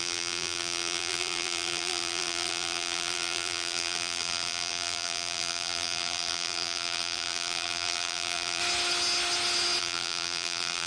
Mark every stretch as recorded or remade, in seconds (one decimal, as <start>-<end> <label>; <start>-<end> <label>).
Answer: 0.0-8.6 remade; 8.6-9.8 recorded; 9.8-10.9 remade